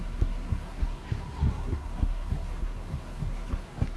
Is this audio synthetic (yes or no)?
yes